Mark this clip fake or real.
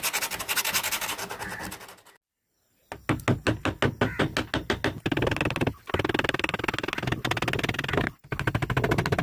real